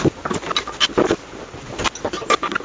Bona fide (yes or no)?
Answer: yes